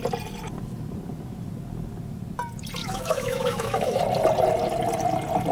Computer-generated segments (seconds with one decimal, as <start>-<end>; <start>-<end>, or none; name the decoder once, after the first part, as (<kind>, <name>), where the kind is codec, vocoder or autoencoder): 2.8-4.0 (autoencoder, DAC-VAE)